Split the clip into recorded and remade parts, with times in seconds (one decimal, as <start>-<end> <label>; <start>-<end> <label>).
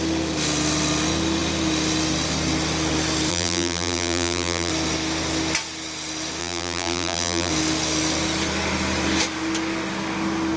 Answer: 0.0-3.3 recorded; 3.3-4.7 remade; 4.7-6.4 recorded; 6.4-7.5 remade; 7.5-10.6 recorded